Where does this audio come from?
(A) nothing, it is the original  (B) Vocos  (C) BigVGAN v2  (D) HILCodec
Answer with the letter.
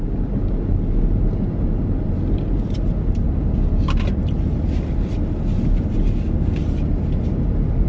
A